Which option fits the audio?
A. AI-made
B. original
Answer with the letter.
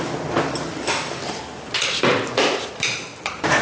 B